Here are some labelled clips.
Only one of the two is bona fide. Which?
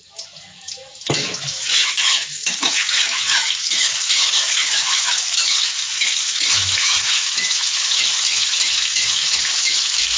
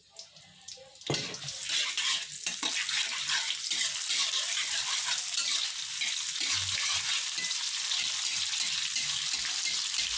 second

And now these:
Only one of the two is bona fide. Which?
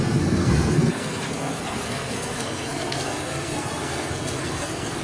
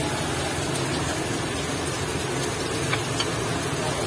second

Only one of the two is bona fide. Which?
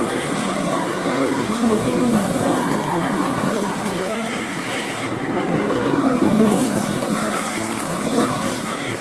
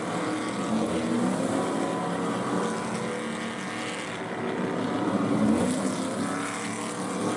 second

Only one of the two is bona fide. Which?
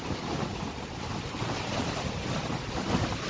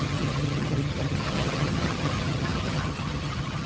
first